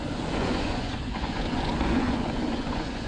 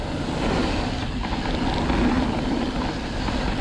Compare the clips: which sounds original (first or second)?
second